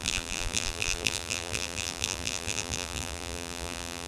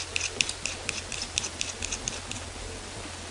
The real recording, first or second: second